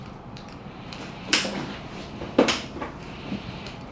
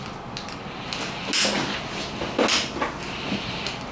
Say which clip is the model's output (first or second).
first